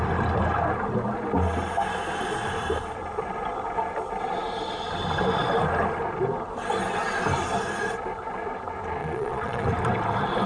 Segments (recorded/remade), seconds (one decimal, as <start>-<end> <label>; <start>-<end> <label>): 0.0-9.0 recorded; 9.0-9.7 remade; 9.7-10.5 recorded